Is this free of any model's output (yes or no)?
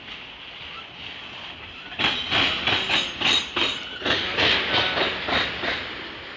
yes